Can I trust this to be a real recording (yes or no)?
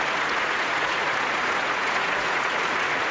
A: no